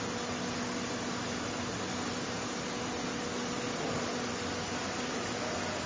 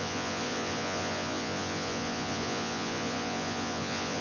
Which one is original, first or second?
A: first